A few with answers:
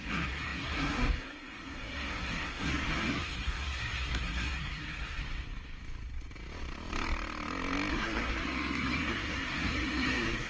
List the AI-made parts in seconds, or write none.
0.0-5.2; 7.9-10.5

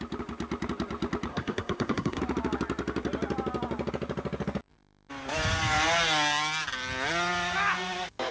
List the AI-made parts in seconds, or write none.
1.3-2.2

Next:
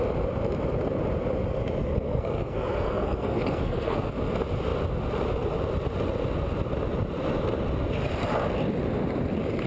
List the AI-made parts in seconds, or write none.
1.8-4.1